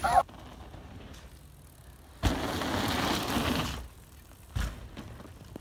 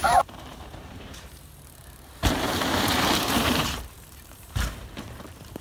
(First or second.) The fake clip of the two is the second